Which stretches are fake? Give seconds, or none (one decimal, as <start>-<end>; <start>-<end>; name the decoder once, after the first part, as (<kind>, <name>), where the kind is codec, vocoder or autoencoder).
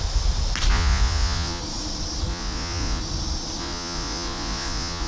0.7-1.6 (vocoder, Vocos); 2.3-3.0; 3.6-5.1